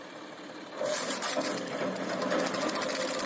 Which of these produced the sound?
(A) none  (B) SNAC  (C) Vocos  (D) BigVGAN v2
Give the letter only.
A